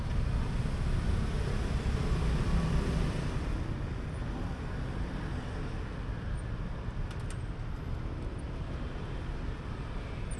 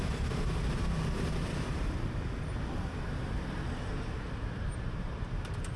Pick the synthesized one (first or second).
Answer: second